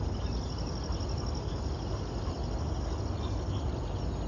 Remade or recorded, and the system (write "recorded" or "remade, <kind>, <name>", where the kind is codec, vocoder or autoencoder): recorded